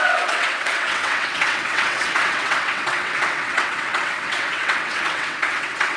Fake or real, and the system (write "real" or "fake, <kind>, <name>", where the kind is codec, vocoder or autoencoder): fake, vocoder, WaveNeXt